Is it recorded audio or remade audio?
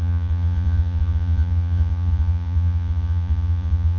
remade